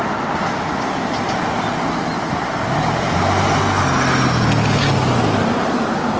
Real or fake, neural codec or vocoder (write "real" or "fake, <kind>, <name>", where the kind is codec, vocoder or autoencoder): real